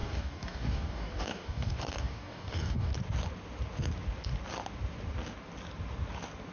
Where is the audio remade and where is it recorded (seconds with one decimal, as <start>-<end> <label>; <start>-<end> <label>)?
0.0-2.9 remade; 2.9-6.5 recorded